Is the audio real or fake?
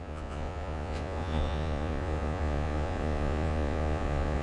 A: fake